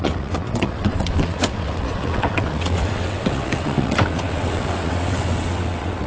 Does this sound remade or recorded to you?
remade